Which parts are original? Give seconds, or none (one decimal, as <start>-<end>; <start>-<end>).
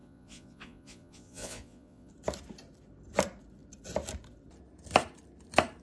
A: 2.1-5.8